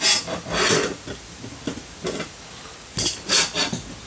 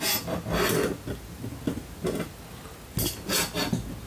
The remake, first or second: first